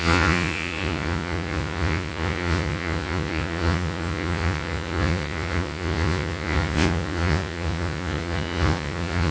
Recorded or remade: remade